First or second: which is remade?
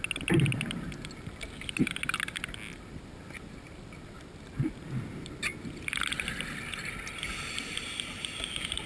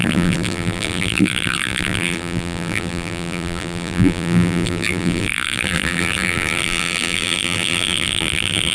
second